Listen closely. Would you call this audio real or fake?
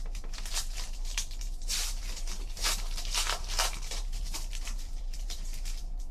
fake